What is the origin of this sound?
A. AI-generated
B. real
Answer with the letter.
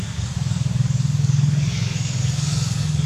A